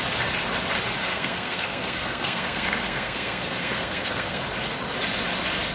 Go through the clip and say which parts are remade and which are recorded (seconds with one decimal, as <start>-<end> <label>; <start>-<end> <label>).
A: 0.0-1.0 recorded; 1.0-4.4 remade; 4.4-5.7 recorded